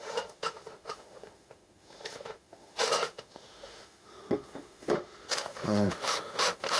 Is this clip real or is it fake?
fake